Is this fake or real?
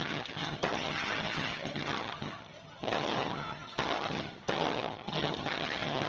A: fake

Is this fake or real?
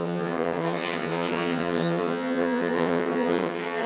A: fake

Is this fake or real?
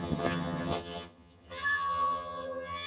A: fake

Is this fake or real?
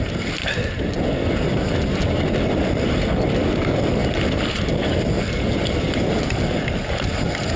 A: real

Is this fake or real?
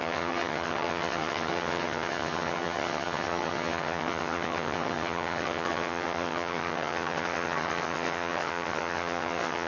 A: fake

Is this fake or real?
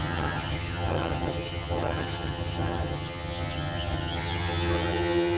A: fake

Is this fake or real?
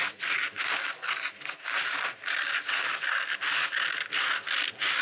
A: real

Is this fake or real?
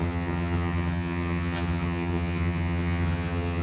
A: fake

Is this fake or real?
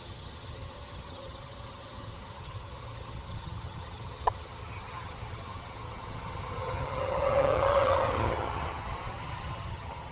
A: fake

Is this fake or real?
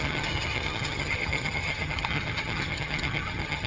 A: fake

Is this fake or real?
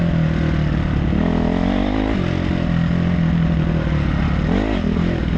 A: real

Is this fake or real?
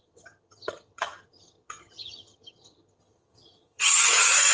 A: fake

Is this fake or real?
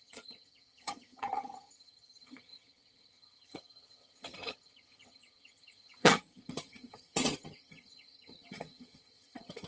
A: fake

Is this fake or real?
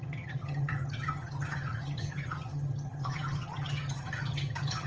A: fake